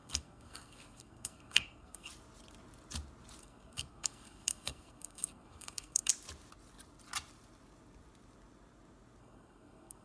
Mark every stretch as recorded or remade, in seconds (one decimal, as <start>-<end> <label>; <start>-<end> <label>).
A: 0.0-2.1 remade; 2.1-3.4 recorded; 3.4-6.1 remade; 6.1-9.2 recorded; 9.2-10.0 remade